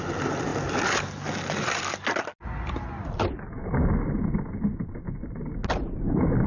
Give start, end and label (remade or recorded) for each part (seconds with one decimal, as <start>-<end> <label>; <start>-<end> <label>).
0.0-6.5 recorded